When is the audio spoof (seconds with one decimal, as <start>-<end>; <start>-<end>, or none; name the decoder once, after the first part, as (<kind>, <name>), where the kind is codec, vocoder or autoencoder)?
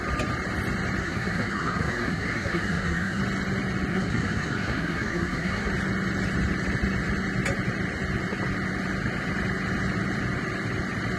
1.0-3.2 (codec, SNAC); 3.9-5.7